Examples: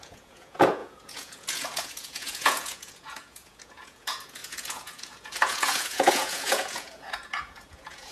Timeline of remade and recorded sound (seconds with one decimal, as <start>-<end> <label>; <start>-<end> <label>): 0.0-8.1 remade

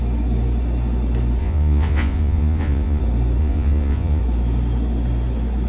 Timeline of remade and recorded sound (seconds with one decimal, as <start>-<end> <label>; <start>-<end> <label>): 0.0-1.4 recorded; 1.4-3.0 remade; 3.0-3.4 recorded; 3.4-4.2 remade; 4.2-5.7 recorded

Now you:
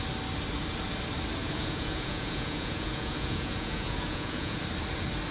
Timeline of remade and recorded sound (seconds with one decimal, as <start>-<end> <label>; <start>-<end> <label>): 0.0-1.4 recorded; 1.4-4.6 remade; 4.6-5.3 recorded

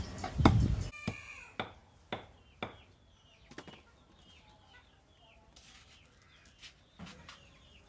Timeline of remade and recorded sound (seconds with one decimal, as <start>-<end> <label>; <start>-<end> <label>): 0.0-7.9 recorded

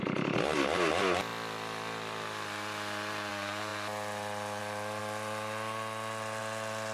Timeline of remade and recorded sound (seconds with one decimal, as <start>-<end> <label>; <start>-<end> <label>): 0.0-6.9 recorded

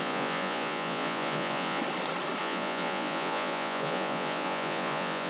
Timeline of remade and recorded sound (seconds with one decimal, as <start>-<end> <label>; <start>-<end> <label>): 0.0-1.8 remade; 1.8-2.4 recorded; 2.4-5.3 remade

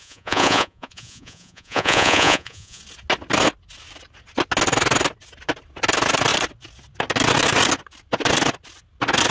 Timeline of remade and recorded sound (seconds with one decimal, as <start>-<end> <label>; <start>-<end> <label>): 0.0-2.8 remade; 2.8-9.3 recorded

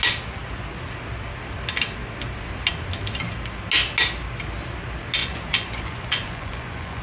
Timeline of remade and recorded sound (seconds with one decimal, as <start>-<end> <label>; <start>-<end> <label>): 0.0-5.2 recorded; 5.2-7.0 remade